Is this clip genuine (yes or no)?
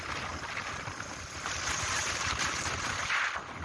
no